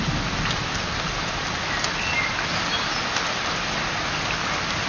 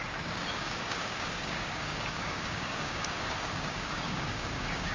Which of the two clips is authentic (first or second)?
first